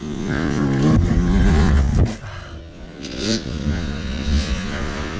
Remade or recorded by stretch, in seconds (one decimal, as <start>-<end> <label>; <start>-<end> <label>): 0.0-0.6 remade; 0.6-1.5 recorded; 1.5-1.9 remade; 1.9-2.6 recorded; 2.6-5.2 remade